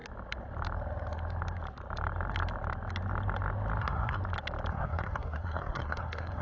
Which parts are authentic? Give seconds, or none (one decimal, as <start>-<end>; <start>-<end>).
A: 0.0-3.8; 4.2-4.7